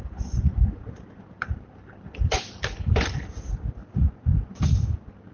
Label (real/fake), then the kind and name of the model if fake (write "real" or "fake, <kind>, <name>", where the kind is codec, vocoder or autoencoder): fake, vocoder, BigVGAN v2